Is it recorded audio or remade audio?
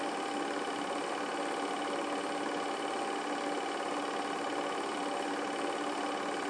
recorded